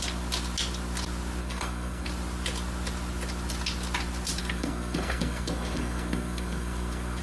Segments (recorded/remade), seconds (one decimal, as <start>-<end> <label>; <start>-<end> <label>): 0.0-1.4 recorded; 1.4-2.1 remade; 2.1-4.4 recorded; 4.4-7.2 remade